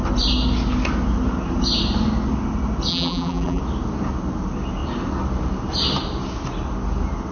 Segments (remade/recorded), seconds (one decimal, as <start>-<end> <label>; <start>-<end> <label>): 0.0-2.9 recorded; 2.9-3.6 remade; 3.6-7.3 recorded